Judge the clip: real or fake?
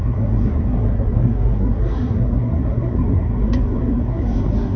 fake